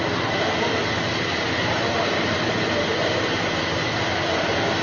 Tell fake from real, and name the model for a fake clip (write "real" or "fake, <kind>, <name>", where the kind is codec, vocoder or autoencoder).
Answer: real